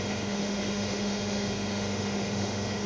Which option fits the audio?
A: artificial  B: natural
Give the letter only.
A